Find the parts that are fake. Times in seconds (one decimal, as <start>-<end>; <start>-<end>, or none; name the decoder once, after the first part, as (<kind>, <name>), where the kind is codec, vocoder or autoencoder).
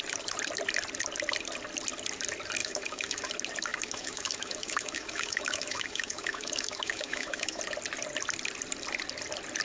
2.6-3.3 (autoencoder, DAC-VAE); 3.7-7.6